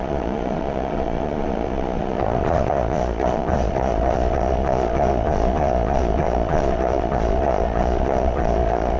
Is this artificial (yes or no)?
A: yes